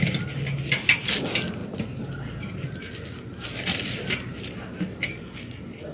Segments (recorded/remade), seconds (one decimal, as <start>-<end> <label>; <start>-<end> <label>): 0.0-5.9 recorded